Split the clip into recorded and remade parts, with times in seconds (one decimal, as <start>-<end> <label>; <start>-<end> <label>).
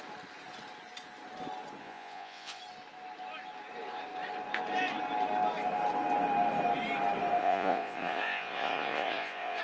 0.0-1.8 recorded; 1.8-2.6 remade; 2.6-7.4 recorded; 7.4-9.6 remade